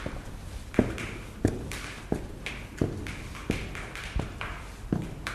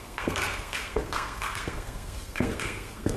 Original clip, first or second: first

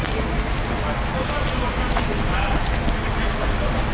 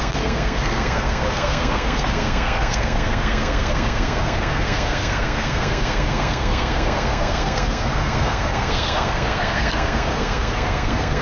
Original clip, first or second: first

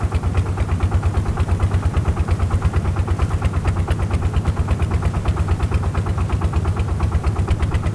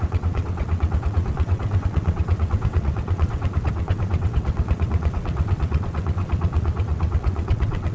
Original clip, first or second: first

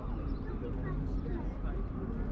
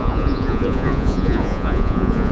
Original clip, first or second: first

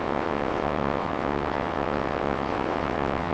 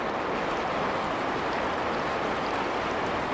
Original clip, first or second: second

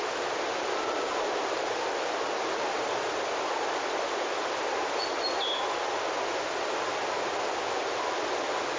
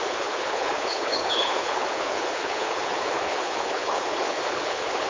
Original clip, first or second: first